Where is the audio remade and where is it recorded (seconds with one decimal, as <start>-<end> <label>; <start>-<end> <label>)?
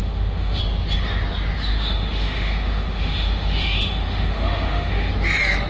0.0-0.6 remade; 0.6-1.7 recorded; 1.7-5.1 remade; 5.1-5.7 recorded